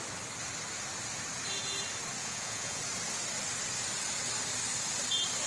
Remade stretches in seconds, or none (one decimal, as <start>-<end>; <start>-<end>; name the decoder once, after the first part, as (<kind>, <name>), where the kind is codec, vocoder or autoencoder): 2.2-2.8 (vocoder, Vocos)